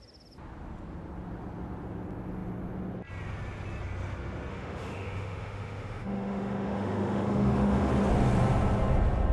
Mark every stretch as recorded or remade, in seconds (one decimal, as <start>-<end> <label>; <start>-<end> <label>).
0.0-4.5 recorded; 4.5-7.9 remade; 7.9-9.3 recorded